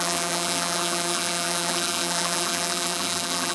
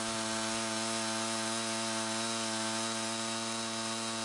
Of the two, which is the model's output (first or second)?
first